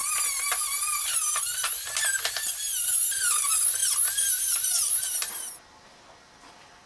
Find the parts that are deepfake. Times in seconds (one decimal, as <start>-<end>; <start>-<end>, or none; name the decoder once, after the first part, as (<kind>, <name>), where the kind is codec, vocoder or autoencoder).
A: none